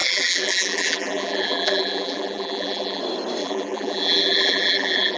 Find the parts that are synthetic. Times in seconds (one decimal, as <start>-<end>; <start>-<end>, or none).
0.0-3.0; 3.4-5.2